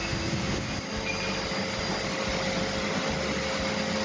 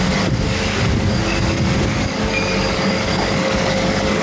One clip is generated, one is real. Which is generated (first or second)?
second